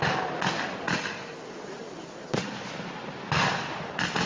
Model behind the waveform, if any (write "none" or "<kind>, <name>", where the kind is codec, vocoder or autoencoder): none